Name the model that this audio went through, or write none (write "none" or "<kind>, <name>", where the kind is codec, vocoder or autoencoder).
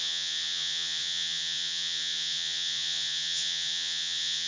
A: vocoder, Vocos